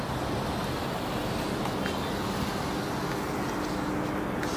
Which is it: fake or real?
real